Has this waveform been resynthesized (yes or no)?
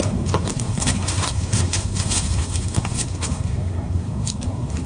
yes